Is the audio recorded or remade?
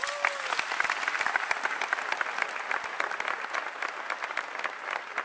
recorded